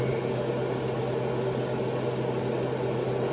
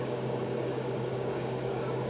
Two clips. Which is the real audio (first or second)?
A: first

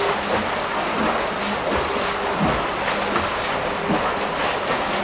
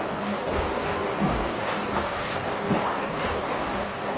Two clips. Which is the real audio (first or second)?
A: first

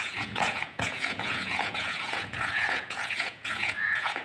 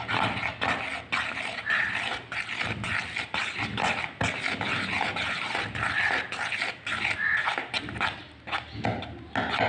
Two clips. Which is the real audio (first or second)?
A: second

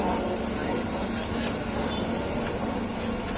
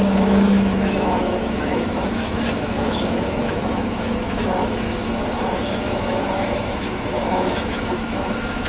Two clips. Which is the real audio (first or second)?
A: first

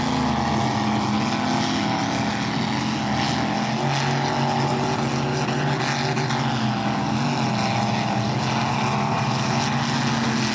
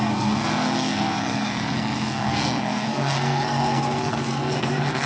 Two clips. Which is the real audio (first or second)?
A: first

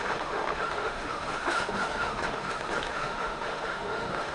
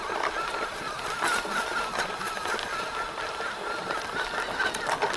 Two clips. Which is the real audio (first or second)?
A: second